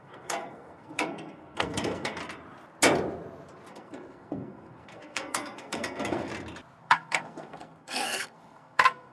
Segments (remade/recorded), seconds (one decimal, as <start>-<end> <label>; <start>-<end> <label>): 0.0-2.2 remade; 2.2-3.7 recorded; 3.7-6.3 remade; 6.3-6.8 recorded; 6.8-9.1 remade

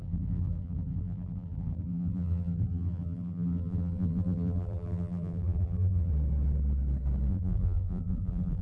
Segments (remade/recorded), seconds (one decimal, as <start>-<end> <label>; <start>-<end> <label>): 0.0-6.1 remade; 6.1-7.3 recorded; 7.3-8.6 remade

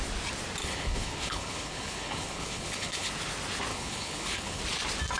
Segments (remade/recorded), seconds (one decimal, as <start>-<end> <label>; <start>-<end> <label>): 0.0-0.6 recorded; 0.6-3.1 remade; 3.1-3.7 recorded; 3.7-4.6 remade; 4.6-5.2 recorded

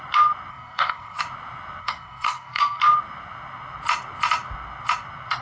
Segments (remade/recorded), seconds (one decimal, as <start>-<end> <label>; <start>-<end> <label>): 0.0-0.5 recorded; 0.5-1.2 remade; 1.2-1.8 recorded; 1.8-2.8 remade; 2.8-5.4 recorded

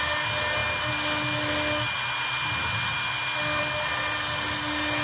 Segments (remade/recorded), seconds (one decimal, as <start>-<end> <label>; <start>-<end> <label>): 0.0-5.0 recorded

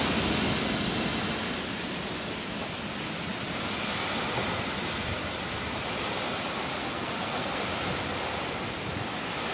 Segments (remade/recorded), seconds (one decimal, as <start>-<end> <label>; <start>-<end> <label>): 0.0-6.8 recorded; 6.8-7.6 remade; 7.6-9.5 recorded